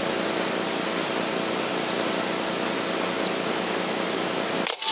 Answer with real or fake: real